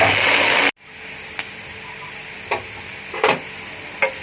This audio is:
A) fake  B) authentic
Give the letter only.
B